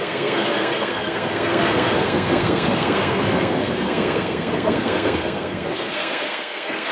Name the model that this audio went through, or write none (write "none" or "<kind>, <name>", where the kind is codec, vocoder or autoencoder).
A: codec, SNAC